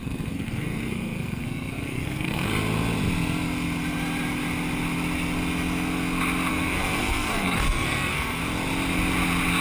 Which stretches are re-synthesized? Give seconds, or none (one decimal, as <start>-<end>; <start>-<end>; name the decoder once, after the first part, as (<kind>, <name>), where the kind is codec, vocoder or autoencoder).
0.0-2.5 (codec, SNAC); 6.5-8.4